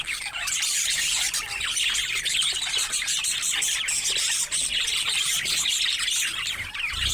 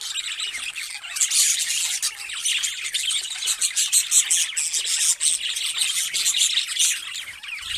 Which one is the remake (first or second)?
first